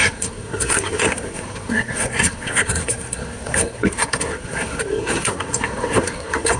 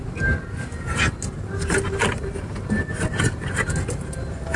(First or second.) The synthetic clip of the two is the first